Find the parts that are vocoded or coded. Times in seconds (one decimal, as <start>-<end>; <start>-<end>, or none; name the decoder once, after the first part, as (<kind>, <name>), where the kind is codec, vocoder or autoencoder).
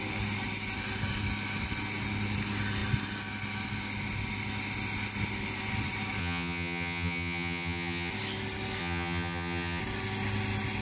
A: 6.2-8.1 (vocoder, HiFi-GAN); 8.8-9.8